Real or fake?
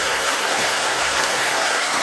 fake